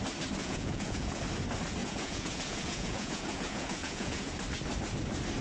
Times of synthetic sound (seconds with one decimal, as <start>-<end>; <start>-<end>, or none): 0.4-1.2; 1.8-4.3